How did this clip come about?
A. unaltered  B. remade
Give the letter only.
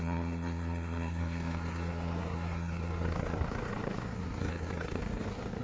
B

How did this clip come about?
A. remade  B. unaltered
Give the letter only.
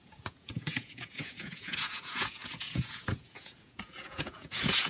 A